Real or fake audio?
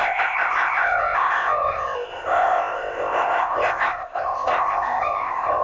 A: fake